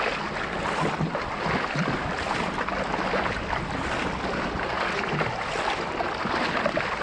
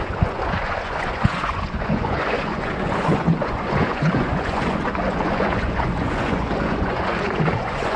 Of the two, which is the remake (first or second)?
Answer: second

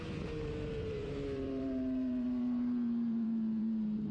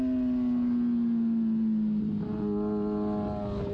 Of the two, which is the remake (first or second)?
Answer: first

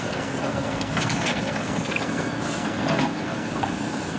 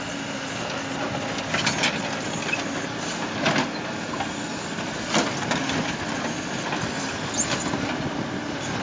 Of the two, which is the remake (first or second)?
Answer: first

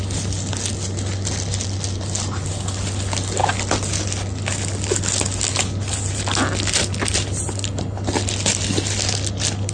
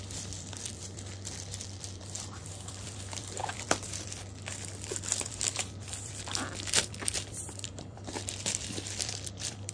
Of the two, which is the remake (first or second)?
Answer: second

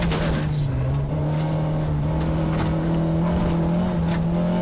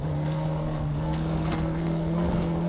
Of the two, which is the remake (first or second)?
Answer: second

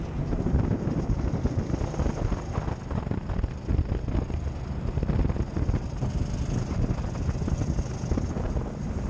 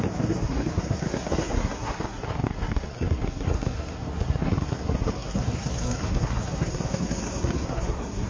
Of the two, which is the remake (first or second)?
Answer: second